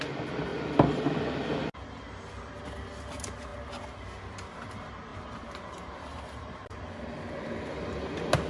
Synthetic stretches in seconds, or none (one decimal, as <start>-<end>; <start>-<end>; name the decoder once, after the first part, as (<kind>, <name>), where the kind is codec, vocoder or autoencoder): 1.6-2.6 (vocoder, BigVGAN v2); 5.1-6.8